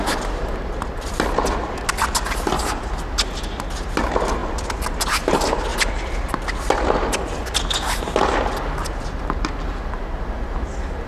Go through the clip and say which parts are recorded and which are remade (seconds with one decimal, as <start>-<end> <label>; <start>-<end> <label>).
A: 0.0-11.1 recorded

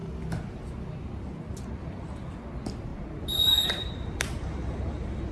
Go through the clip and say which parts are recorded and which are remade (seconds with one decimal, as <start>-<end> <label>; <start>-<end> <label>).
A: 0.0-2.3 recorded; 2.3-5.3 remade

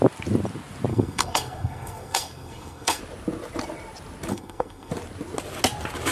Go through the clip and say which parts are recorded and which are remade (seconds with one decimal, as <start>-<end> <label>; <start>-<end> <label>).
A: 0.0-0.9 recorded; 0.9-3.0 remade; 3.0-4.3 recorded; 4.3-4.9 remade; 4.9-6.1 recorded

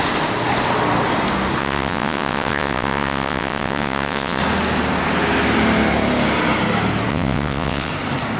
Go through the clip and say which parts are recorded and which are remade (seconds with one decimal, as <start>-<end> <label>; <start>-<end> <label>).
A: 0.0-1.6 recorded; 1.6-4.4 remade; 4.4-7.1 recorded; 7.1-7.9 remade; 7.9-8.4 recorded

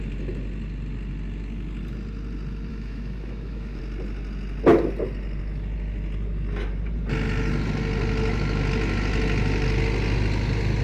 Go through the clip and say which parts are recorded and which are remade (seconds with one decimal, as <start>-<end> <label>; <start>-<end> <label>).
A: 0.0-2.7 recorded; 2.7-3.8 remade; 3.8-10.8 recorded

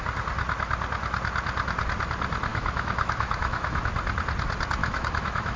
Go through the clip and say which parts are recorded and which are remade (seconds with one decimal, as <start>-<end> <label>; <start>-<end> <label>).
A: 0.0-2.5 recorded; 2.5-3.8 remade; 3.8-4.8 recorded; 4.8-5.6 remade